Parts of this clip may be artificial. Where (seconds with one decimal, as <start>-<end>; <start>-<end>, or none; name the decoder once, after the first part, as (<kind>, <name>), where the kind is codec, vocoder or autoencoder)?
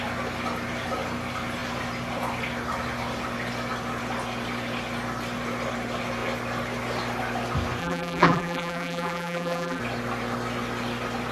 7.8-9.8 (vocoder, BigVGAN v2)